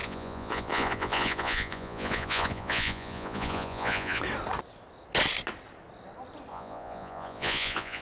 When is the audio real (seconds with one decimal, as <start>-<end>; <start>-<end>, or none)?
4.2-6.5